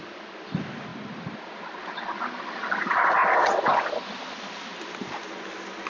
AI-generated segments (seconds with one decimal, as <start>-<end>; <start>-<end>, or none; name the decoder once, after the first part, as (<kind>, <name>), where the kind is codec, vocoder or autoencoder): none